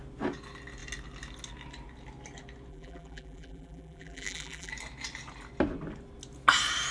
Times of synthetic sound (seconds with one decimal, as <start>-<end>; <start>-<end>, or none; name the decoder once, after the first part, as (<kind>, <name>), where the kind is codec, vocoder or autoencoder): 2.7-4.7 (vocoder, BigVGAN v2)

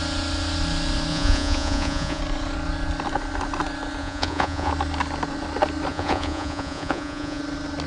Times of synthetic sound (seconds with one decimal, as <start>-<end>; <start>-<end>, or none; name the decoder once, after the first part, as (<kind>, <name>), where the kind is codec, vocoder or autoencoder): 1.1-2.2 (vocoder, Vocos); 4.0-4.7; 5.9-7.4

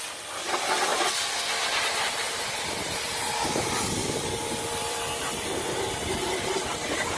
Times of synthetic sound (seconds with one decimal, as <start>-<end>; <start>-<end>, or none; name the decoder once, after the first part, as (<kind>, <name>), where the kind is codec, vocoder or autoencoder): 0.9-3.3 (vocoder, BigVGAN v2); 4.0-7.2

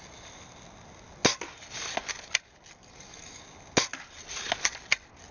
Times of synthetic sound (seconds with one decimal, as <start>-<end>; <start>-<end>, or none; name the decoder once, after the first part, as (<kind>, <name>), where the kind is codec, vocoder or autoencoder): 2.8-3.4 (codec, DAC)